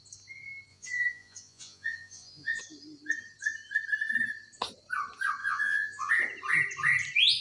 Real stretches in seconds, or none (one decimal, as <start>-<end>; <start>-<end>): 0.0-0.7; 2.6-5.4; 6.1-7.4